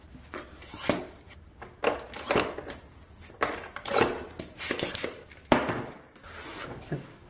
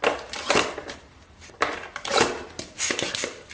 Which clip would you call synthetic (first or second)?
second